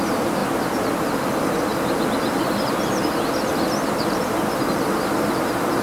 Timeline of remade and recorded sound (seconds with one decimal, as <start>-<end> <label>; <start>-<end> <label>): 0.0-5.8 recorded